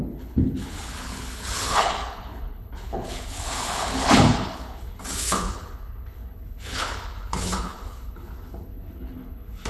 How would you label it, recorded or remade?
remade